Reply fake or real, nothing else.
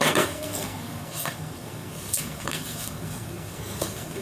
fake